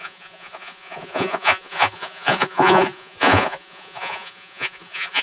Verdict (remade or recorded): remade